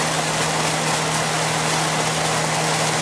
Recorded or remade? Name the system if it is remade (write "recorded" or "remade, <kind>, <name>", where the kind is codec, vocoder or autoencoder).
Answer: recorded